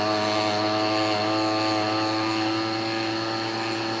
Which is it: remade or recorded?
recorded